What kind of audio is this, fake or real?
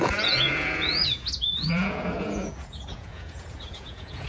fake